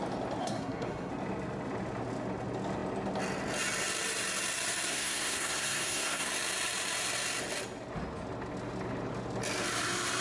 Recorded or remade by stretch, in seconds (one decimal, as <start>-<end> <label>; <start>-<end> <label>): 0.0-0.4 recorded; 0.4-1.1 remade; 1.1-4.9 recorded; 4.9-6.3 remade; 6.3-10.2 recorded